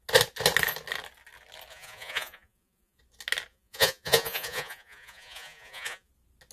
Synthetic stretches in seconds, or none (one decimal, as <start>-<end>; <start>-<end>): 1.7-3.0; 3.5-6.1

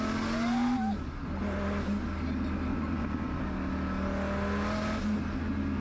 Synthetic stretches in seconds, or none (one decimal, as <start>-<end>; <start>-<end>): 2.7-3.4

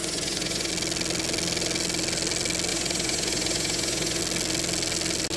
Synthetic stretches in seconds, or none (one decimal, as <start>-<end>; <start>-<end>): 0.0-0.7; 2.7-4.2